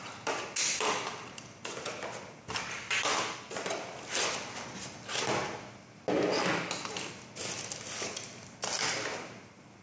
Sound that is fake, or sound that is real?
real